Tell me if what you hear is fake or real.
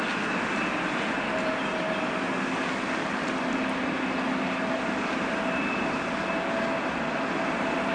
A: real